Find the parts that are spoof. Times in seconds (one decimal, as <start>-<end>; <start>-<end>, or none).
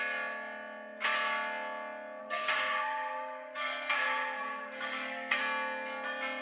2.2-5.4